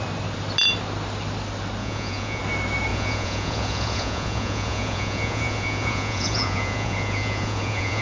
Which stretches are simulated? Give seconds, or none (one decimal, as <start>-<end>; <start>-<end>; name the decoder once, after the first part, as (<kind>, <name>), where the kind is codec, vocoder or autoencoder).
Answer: 1.8-2.4 (vocoder, Vocos); 2.9-8.0